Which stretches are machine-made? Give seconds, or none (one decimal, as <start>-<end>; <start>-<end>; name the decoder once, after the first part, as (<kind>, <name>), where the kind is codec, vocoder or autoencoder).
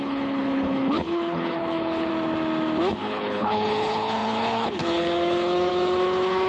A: 0.0-2.1 (codec, HILCodec); 2.9-6.5